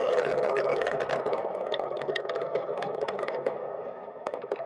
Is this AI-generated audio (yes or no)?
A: yes